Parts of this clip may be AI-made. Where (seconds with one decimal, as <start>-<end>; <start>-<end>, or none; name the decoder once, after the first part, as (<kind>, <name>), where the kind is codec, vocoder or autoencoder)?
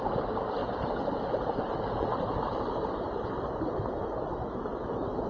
0.6-1.9 (vocoder, BigVGAN v2)